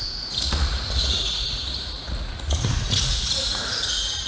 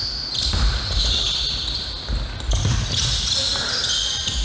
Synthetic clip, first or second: first